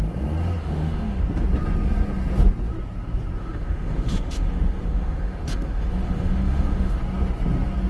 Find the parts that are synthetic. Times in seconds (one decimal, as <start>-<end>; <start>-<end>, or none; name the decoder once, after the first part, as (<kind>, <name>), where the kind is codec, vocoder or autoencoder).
0.6-1.2 (autoencoder, DAC-VAE); 3.4-7.0